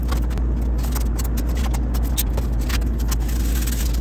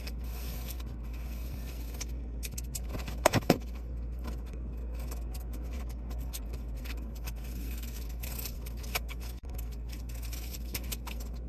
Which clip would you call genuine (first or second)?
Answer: first